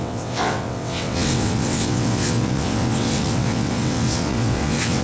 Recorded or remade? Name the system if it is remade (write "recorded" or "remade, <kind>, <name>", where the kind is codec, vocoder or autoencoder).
remade, vocoder, WaveNeXt